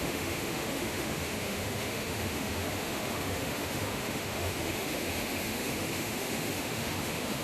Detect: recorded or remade remade